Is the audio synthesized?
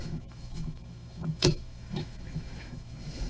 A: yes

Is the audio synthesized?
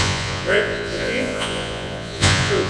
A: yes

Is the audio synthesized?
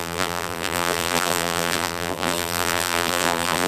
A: yes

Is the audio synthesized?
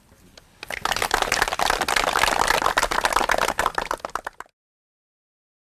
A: no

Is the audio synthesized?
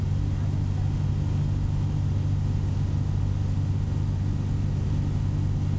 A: no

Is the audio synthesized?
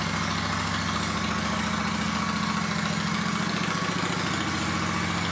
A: no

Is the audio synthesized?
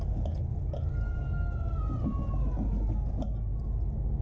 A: no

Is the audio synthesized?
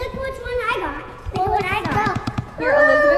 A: yes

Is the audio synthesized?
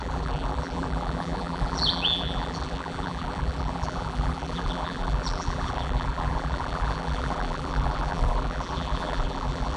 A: yes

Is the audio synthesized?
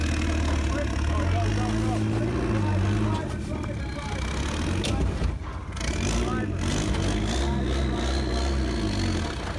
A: no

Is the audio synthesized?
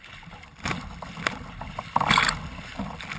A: no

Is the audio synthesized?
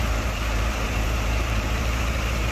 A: yes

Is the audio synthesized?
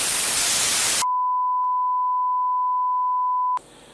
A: no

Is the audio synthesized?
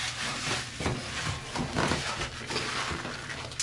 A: no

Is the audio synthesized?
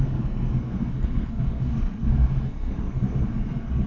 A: yes